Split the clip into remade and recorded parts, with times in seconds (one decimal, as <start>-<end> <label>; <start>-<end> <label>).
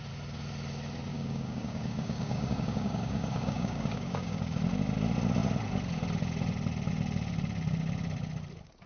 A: 0.0-1.1 recorded; 1.1-4.6 remade; 4.6-8.9 recorded